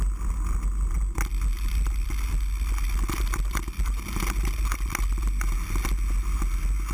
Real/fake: real